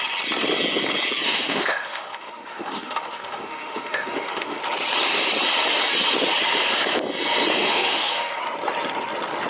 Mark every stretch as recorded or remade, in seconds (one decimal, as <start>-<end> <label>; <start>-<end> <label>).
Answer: 0.0-1.3 recorded; 1.3-4.6 remade; 4.6-7.7 recorded; 7.7-8.4 remade; 8.4-9.5 recorded